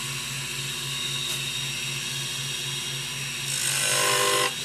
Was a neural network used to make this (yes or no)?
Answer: no